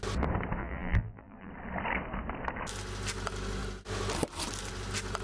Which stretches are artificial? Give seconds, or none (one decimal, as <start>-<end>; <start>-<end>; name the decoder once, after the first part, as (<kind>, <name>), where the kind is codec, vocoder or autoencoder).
0.6-1.5 (vocoder, BigVGAN v2)